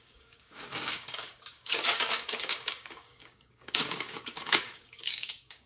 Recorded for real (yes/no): no